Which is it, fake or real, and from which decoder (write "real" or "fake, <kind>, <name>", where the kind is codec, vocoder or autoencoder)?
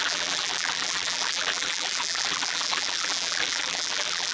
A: fake, vocoder, BigVGAN v2